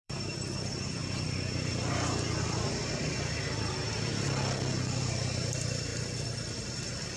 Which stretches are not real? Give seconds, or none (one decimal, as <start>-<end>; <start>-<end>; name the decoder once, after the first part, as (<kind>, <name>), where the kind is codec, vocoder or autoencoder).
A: 0.0-1.0 (vocoder, BigVGAN v2); 2.4-4.1; 5.0-5.9

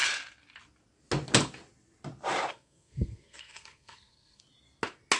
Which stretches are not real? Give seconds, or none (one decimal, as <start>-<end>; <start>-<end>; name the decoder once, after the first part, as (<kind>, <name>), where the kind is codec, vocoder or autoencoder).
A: 2.5-4.4 (codec, SNAC)

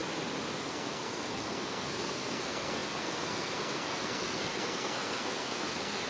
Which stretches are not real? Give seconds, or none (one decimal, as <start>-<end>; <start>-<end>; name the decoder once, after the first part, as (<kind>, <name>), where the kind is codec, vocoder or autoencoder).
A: 0.6-6.1 (codec, SNAC)